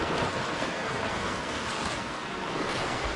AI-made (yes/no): yes